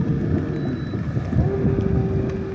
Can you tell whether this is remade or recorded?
recorded